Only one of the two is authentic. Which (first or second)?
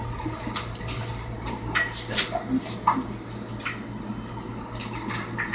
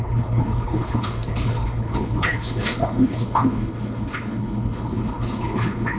first